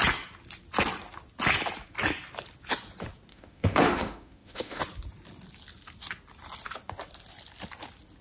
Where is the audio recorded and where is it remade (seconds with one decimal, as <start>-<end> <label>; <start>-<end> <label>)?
0.0-3.3 recorded; 3.3-4.8 remade; 4.8-8.2 recorded